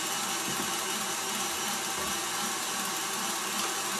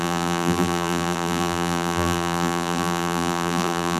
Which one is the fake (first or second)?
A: second